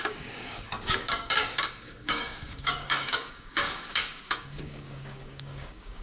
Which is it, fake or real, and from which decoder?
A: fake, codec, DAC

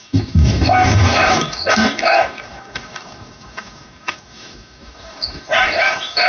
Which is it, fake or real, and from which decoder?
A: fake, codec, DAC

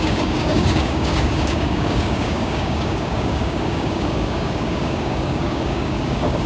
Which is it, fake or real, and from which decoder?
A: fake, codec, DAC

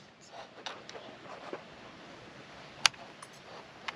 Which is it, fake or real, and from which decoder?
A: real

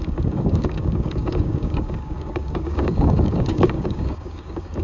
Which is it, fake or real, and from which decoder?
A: fake, codec, DAC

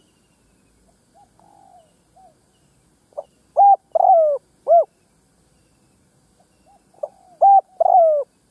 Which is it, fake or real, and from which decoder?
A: real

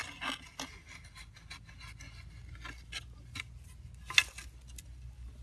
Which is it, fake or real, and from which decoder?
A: real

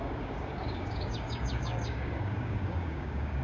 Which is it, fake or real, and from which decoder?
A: fake, codec, DAC